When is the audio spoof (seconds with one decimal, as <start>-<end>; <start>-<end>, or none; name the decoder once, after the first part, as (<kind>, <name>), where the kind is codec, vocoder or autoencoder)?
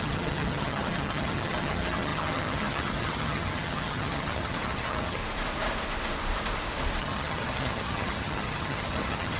0.0-5.2 (vocoder, HiFi-GAN); 7.0-9.4